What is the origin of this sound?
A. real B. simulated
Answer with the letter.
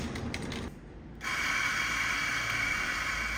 A